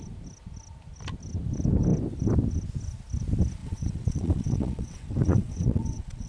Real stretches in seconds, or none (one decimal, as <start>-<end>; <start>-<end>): 0.0-3.6